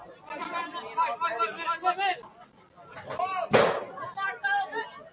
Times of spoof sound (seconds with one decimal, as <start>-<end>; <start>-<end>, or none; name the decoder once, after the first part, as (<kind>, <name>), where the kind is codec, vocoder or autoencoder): none